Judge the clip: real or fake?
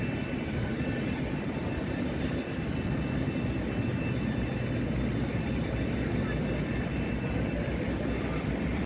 real